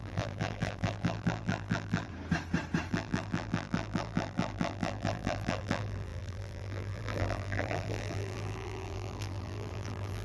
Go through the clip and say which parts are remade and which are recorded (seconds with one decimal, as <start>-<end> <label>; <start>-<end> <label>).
0.0-2.1 remade; 2.1-2.9 recorded; 2.9-10.2 remade